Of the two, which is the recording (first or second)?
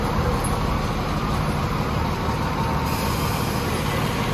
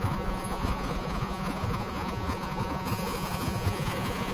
first